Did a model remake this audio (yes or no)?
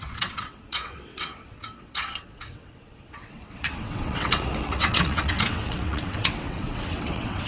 yes